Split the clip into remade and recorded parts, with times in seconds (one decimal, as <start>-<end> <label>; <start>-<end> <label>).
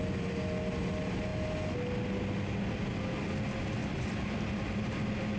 0.0-3.8 recorded; 3.8-4.6 remade; 4.6-5.4 recorded